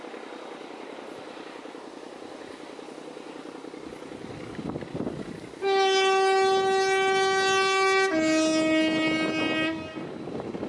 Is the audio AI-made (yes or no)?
no